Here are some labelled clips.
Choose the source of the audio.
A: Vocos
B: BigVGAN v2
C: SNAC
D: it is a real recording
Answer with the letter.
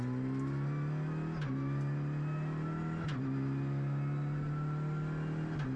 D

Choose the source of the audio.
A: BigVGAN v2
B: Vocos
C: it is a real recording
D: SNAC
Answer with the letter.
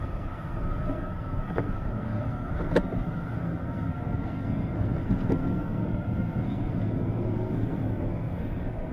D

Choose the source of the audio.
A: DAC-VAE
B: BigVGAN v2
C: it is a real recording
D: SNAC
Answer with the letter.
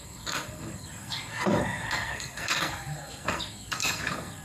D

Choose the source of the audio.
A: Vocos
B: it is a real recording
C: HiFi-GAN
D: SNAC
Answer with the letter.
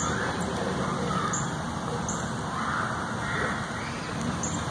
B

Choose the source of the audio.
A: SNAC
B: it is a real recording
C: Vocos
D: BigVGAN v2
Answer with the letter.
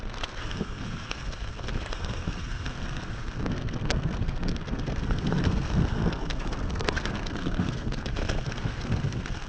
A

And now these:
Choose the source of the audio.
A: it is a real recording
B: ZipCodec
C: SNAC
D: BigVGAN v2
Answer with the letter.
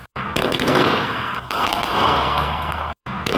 C